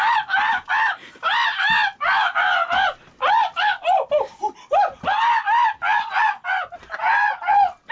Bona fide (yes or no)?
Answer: yes